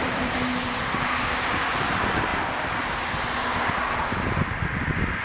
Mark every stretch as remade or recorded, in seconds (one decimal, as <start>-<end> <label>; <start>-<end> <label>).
0.0-0.8 remade; 0.8-5.2 recorded